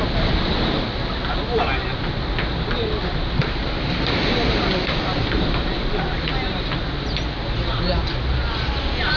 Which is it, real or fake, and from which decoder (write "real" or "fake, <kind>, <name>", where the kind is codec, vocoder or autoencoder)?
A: real